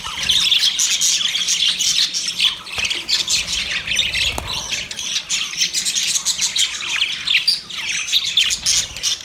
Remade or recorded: recorded